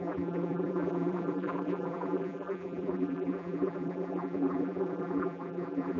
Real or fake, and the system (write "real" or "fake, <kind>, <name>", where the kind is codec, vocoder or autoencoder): fake, vocoder, BigVGAN v2